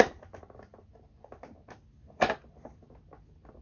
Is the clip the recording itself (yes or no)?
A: yes